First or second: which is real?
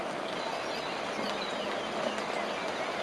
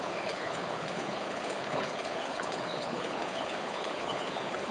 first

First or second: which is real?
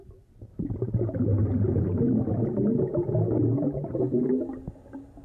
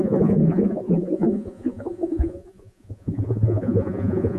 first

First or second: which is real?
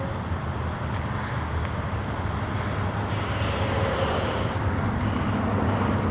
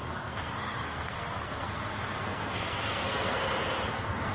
first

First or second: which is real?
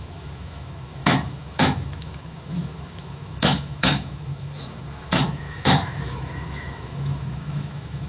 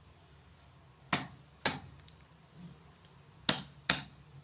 second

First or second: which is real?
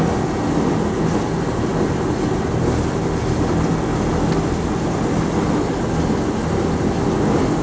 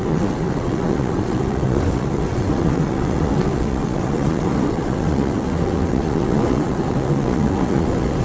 first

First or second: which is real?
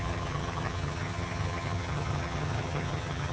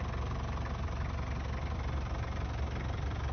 second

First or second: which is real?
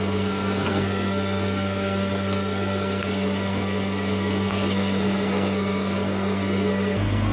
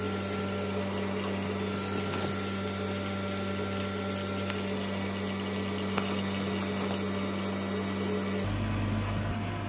second